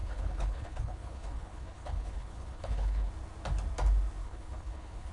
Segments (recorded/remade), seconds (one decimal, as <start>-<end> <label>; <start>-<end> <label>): 0.0-3.1 remade; 3.1-4.2 recorded; 4.2-5.1 remade